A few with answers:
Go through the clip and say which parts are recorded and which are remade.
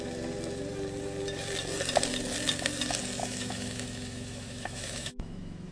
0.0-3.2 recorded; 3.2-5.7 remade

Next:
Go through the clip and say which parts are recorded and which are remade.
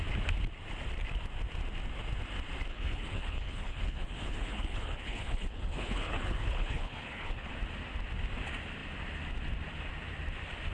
0.0-2.7 recorded; 2.7-7.5 remade; 7.5-10.7 recorded